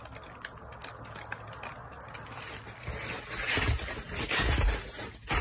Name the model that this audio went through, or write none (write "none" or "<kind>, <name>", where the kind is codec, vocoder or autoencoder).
none